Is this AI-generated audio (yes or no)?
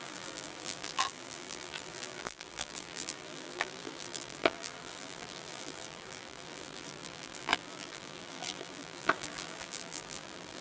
yes